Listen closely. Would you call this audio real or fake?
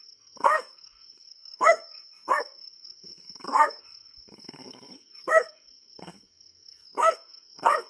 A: fake